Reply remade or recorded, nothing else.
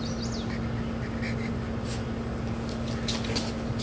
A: recorded